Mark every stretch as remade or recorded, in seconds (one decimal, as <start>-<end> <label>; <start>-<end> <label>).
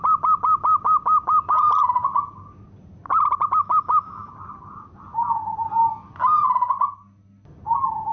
0.0-3.6 recorded; 3.6-4.3 remade; 4.3-8.1 recorded